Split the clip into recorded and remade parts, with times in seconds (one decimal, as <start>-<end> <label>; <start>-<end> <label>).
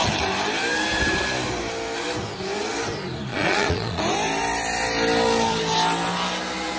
0.0-3.3 recorded; 3.3-4.0 remade; 4.0-6.8 recorded